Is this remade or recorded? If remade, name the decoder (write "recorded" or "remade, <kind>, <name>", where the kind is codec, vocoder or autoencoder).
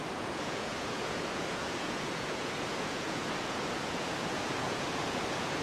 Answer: remade, vocoder, Vocos